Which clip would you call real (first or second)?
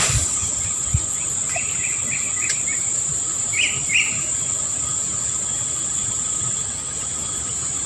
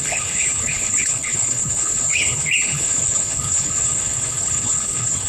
first